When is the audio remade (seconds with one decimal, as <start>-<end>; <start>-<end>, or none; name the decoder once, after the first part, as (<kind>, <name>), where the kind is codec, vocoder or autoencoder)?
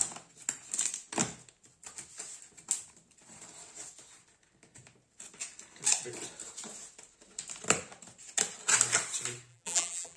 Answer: 9.5-10.2 (vocoder, BigVGAN v2)